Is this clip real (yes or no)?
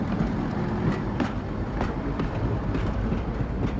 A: no